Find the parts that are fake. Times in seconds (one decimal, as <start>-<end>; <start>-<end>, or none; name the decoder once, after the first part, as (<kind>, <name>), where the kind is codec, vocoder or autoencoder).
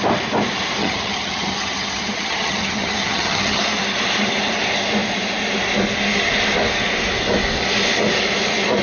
0.8-3.6 (vocoder, HiFi-GAN)